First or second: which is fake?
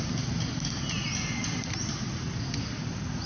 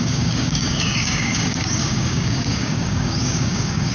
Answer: second